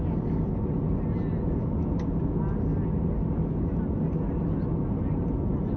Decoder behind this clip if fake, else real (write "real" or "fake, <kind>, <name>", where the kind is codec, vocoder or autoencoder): real